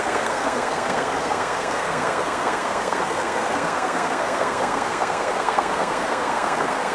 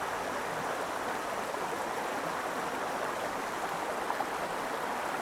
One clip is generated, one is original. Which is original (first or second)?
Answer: second